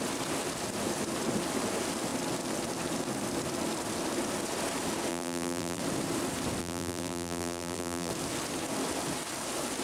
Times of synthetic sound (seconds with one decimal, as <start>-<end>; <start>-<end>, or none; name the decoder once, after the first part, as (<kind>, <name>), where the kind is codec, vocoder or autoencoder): 5.1-5.8 (vocoder, BigVGAN v2); 6.6-8.1